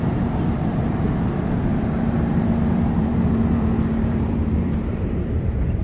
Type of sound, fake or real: fake